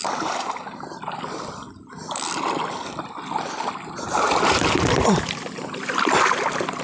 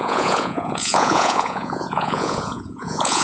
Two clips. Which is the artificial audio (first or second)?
second